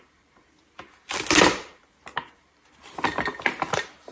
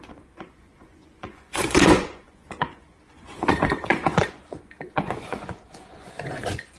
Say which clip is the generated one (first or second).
second